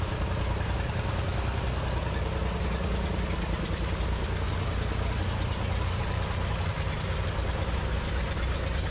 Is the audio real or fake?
real